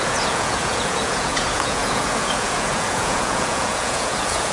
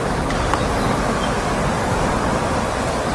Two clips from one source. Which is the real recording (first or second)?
second